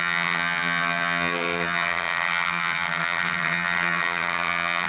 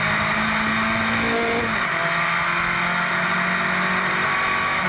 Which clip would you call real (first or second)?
second